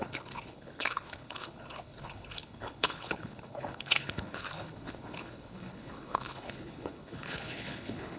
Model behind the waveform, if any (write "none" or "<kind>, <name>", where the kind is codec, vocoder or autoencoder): codec, HILCodec